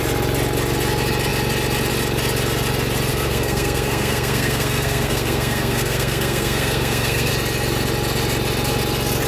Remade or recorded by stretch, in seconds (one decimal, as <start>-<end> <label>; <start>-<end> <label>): 0.0-3.1 recorded; 3.1-7.3 remade; 7.3-9.3 recorded